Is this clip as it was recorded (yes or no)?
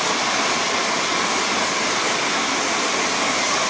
yes